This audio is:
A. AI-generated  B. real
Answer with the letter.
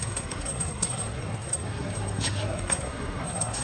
A